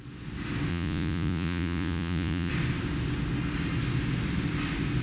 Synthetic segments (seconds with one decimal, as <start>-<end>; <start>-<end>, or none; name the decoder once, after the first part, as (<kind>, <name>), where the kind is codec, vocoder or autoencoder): 0.7-2.5 (vocoder, Vocos)